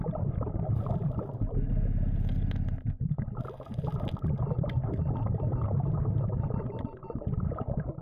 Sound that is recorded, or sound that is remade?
recorded